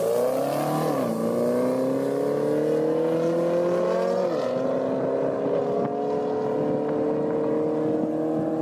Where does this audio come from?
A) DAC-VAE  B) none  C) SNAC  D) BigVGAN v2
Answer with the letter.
B